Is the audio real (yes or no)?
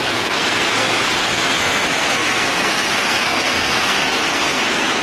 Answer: no